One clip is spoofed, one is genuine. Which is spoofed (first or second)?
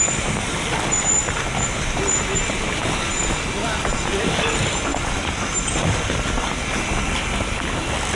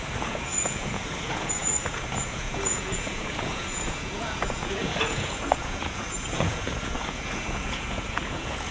second